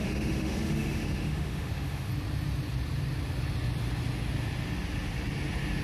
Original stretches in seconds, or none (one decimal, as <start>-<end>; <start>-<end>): 2.1-5.8